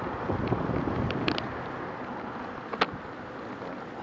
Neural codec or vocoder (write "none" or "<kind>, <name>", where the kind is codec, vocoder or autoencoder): none